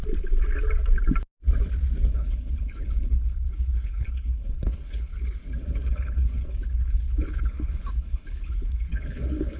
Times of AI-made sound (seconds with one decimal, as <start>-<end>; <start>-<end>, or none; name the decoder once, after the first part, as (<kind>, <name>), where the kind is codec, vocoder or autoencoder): 2.1-5.1 (codec, HILCodec); 5.6-9.6